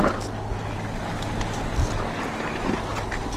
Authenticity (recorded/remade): recorded